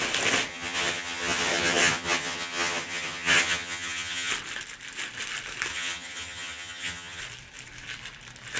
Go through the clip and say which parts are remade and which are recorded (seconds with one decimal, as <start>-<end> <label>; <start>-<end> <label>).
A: 0.0-0.5 recorded; 0.5-4.3 remade; 4.3-5.7 recorded; 5.7-7.2 remade; 7.2-8.6 recorded